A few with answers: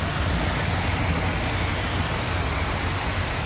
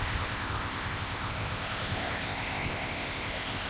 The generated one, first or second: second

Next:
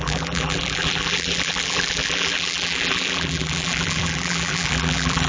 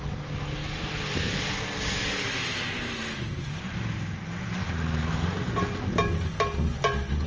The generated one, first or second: first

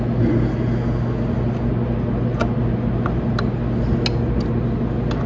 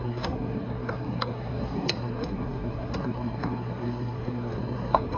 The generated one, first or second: second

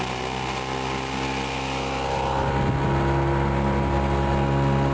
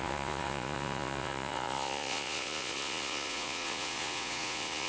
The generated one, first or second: second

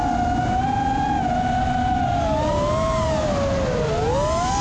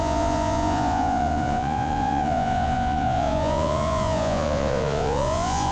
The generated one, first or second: second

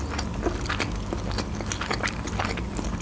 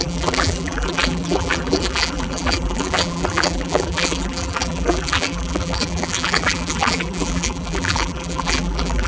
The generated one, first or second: second